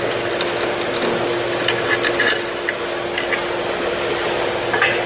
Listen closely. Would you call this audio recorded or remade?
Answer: recorded